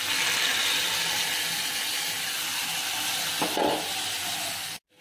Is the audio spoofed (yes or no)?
no